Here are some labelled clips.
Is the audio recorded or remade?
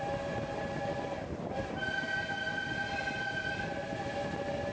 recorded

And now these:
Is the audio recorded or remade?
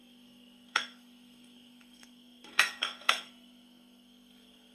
remade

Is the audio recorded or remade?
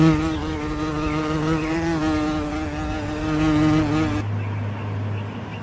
recorded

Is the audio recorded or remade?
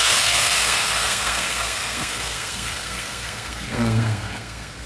remade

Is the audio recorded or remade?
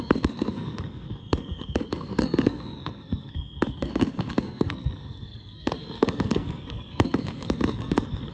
remade